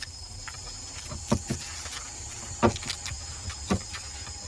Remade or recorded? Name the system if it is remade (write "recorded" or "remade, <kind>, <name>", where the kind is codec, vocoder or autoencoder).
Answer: recorded